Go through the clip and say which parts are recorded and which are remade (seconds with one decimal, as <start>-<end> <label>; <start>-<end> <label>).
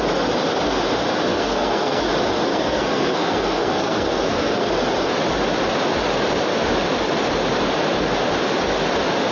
0.0-1.3 recorded; 1.3-2.1 remade; 2.1-2.5 recorded; 2.5-4.7 remade; 4.7-9.3 recorded